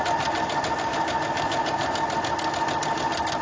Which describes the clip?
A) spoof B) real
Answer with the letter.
B